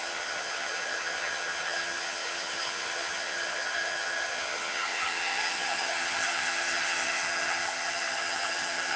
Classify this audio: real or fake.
fake